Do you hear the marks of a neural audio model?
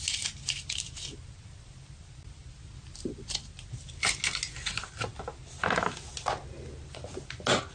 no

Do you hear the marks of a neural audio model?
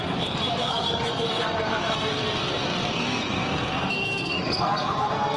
yes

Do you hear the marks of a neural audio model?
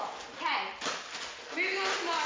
no